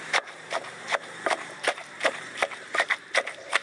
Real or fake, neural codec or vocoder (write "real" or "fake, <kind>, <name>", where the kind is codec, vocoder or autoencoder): fake, vocoder, BigVGAN v2